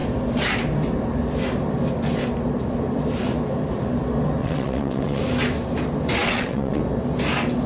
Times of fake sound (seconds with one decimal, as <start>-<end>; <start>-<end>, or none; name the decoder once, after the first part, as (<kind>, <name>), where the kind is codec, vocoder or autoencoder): 4.4-5.2 (vocoder, WaveNeXt); 6.2-6.8